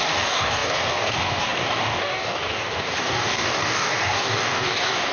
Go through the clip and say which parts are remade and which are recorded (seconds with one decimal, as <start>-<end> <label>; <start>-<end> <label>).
0.0-5.1 remade